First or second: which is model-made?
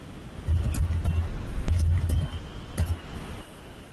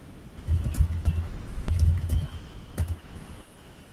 second